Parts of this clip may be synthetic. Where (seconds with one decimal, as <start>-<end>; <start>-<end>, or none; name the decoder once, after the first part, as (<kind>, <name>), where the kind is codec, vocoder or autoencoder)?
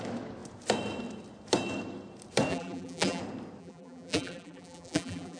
2.5-3.2 (vocoder, BigVGAN v2); 3.6-5.4